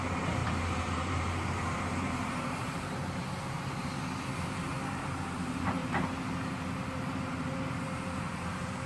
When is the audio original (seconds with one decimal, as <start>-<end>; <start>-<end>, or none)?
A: 3.8-4.9